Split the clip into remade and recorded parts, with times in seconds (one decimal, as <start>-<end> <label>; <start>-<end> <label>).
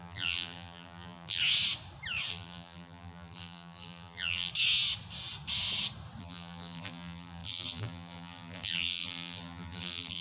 0.0-1.4 remade; 1.4-2.3 recorded; 2.3-4.5 remade; 4.5-6.2 recorded; 6.2-10.2 remade